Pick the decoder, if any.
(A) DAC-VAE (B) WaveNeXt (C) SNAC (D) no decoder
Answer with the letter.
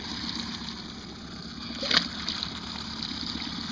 D